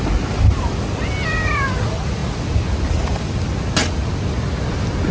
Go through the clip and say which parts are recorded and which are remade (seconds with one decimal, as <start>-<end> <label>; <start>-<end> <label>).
0.0-5.1 recorded